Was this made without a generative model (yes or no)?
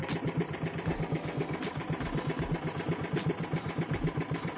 no